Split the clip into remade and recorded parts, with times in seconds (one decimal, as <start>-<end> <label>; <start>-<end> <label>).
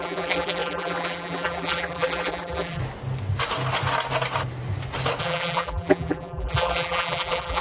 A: 0.0-2.8 remade; 2.8-5.2 recorded; 5.2-7.6 remade